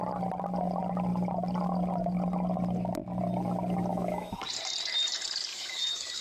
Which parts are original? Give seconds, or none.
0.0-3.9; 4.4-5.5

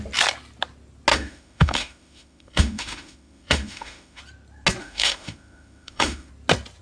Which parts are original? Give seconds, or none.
0.0-1.1; 4.2-4.8; 6.3-6.8

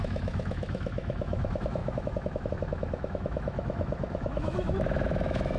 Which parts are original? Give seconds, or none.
none

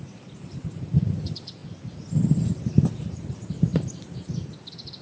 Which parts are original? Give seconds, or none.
0.0-5.0

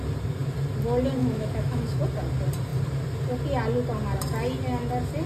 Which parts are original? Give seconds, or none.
0.0-1.2; 2.0-5.3